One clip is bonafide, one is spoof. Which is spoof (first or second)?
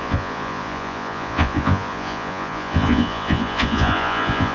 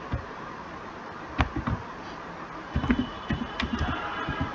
first